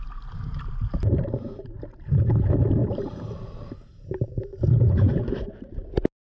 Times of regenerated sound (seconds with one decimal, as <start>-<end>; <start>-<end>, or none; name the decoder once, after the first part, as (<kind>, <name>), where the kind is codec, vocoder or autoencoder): 2.8-3.7 (vocoder, BigVGAN v2); 4.5-5.5